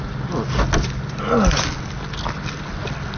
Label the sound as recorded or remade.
recorded